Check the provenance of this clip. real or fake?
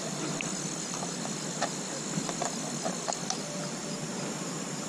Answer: real